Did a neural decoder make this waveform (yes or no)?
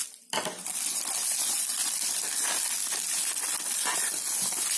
no